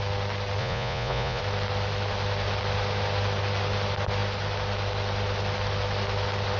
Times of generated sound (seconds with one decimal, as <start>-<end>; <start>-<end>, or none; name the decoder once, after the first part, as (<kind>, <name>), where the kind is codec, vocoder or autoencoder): 0.6-1.4 (vocoder, Vocos)